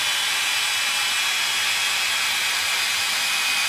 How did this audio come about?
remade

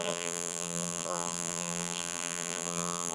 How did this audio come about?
remade